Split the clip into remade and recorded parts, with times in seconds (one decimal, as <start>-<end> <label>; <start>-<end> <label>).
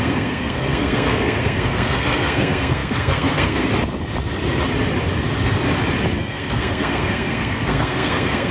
0.0-3.7 remade; 3.7-6.2 recorded; 6.2-8.5 remade